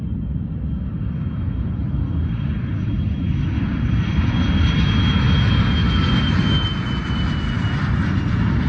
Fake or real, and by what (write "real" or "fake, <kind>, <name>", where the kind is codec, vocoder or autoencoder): real